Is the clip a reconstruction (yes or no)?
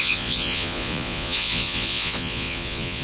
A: yes